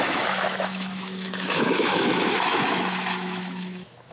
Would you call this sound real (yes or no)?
no